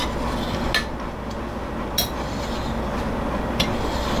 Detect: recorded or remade recorded